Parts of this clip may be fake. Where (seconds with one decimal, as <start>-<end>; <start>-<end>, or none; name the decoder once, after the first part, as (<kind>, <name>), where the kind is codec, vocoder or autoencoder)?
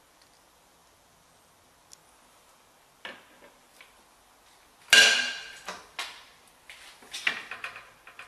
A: none